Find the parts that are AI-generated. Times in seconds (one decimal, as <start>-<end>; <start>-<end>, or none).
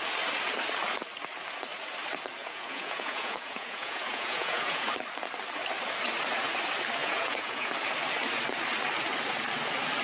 2.4-4.9; 7.0-7.7